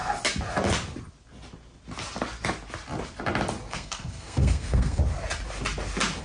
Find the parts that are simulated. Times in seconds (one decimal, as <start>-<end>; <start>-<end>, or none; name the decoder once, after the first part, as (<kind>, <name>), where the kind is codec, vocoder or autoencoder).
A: 3.7-5.0 (codec, SNAC)